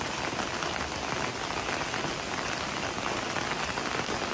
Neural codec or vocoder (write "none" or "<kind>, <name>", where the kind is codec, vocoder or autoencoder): none